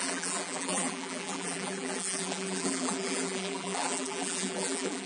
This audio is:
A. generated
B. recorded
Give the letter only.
A